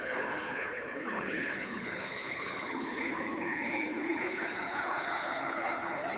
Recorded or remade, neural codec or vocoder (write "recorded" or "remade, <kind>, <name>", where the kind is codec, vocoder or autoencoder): remade, codec, HILCodec